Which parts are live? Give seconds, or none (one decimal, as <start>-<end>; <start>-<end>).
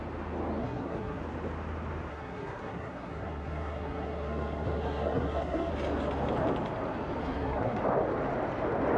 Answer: 0.0-0.6; 1.2-2.1; 5.7-7.2; 7.8-9.0